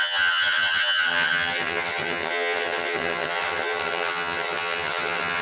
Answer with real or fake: fake